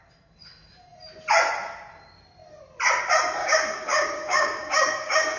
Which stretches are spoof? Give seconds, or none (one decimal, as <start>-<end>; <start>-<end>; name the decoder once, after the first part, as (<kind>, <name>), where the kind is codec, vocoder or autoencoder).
3.4-5.4 (codec, DAC)